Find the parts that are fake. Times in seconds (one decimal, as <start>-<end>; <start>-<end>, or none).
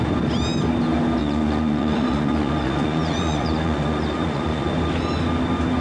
1.2-4.7